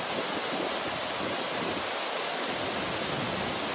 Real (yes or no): yes